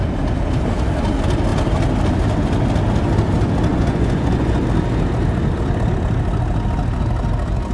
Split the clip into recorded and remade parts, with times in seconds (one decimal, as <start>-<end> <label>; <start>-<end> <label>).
0.0-3.7 recorded; 3.7-4.6 remade; 4.6-7.7 recorded